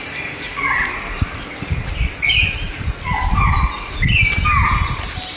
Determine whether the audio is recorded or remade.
recorded